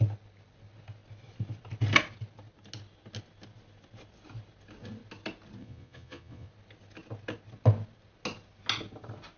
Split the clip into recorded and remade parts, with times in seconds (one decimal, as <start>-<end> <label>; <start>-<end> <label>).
0.0-5.6 recorded; 5.6-6.5 remade; 6.5-9.4 recorded

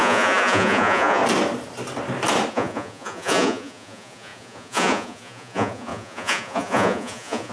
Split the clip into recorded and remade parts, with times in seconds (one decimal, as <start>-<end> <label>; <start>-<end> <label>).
0.0-1.2 remade; 1.2-2.5 recorded; 2.5-7.5 remade

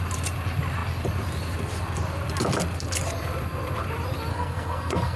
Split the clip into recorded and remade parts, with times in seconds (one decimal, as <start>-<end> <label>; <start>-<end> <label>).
0.0-4.3 recorded; 4.3-5.2 remade

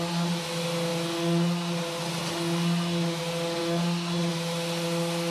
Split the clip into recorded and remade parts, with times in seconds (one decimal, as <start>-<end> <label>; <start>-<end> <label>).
0.0-5.3 recorded

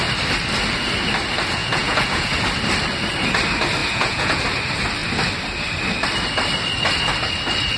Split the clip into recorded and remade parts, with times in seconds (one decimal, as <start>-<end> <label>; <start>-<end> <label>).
0.0-1.6 recorded; 1.6-2.3 remade; 2.3-3.8 recorded; 3.8-4.4 remade; 4.4-7.8 recorded

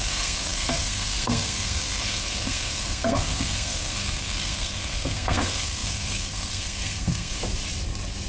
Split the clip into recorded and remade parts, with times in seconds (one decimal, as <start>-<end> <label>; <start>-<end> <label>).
0.0-7.4 remade; 7.4-8.3 recorded

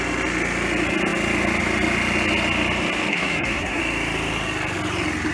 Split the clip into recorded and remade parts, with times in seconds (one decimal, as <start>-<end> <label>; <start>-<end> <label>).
0.0-3.1 recorded; 3.1-3.8 remade; 3.8-5.3 recorded

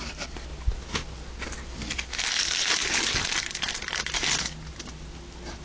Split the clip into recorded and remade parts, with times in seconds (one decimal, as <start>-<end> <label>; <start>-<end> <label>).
0.0-2.8 recorded; 2.8-3.9 remade; 3.9-5.6 recorded